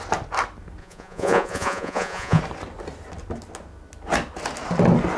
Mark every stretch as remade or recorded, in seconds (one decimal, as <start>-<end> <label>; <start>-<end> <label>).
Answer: 0.0-0.8 recorded; 0.8-2.4 remade; 2.4-5.2 recorded